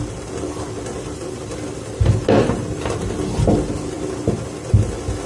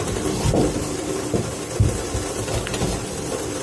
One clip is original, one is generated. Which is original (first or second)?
first